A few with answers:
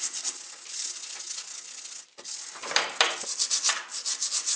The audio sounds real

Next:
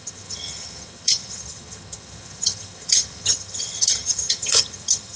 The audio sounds fake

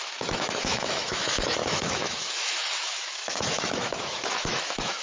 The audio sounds fake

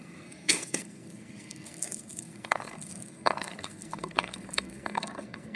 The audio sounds fake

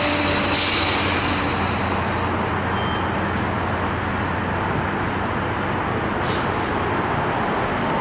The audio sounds real